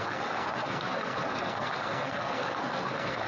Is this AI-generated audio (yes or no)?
yes